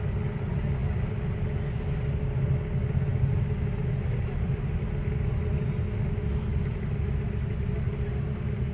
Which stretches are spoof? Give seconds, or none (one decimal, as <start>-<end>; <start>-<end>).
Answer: none